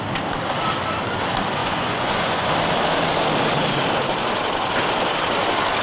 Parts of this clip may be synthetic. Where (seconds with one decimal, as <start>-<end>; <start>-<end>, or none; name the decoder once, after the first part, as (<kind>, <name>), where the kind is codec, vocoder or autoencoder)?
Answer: 1.6-2.5 (vocoder, Vocos)